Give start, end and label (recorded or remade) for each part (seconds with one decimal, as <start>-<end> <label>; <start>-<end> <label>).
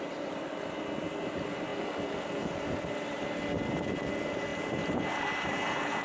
0.0-6.0 recorded